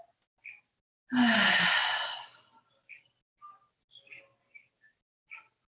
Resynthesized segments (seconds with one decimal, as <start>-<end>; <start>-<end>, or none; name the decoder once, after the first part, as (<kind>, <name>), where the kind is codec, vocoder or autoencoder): none